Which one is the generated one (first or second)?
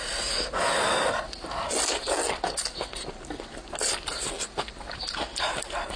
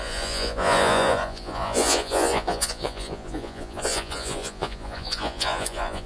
second